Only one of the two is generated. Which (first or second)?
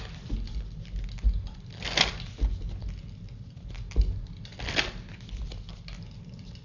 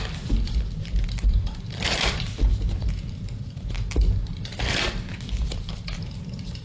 second